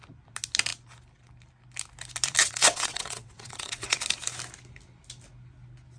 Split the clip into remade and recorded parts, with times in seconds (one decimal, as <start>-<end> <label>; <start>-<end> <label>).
0.0-2.4 recorded; 2.4-4.0 remade; 4.0-6.0 recorded